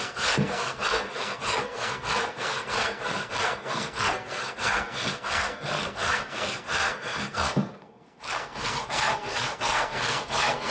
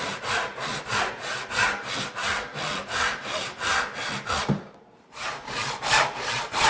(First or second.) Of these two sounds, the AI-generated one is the first